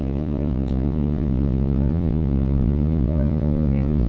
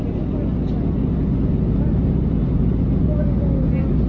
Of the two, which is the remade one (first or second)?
first